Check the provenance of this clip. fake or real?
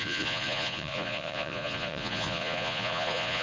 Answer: fake